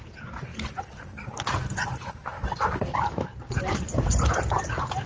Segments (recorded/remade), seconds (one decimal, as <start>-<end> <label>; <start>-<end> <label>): 0.0-5.1 recorded